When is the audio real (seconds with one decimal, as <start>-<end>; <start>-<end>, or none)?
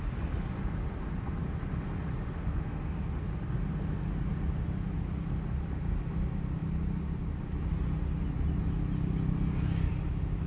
0.0-10.5